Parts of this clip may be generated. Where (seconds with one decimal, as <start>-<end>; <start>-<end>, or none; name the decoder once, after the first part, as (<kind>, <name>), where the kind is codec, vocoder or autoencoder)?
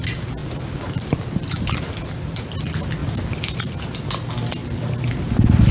0.4-2.6 (vocoder, BigVGAN v2); 3.0-3.6; 4.6-5.3